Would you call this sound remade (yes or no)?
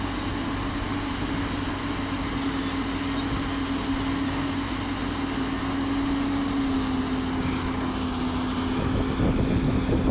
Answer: no